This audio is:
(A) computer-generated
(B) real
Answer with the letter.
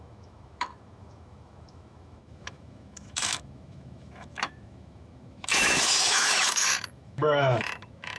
A